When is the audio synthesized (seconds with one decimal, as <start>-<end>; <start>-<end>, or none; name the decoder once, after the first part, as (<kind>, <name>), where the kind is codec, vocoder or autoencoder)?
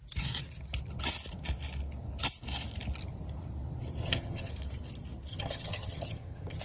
4.0-4.5 (vocoder, HiFi-GAN); 5.3-6.6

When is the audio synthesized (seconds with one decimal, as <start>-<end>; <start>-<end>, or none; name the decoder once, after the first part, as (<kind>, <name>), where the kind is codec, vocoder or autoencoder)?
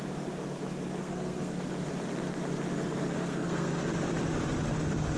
1.0-1.7 (codec, SNAC); 3.1-3.8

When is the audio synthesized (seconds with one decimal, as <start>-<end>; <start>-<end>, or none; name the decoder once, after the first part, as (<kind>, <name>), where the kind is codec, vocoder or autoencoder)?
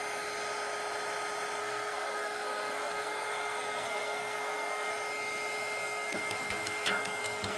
1.6-4.9 (codec, SNAC); 5.8-7.6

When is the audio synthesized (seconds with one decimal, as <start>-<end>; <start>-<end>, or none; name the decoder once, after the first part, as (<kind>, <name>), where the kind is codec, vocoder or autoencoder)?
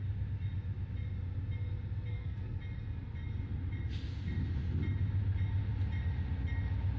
2.1-2.6 (codec, SNAC)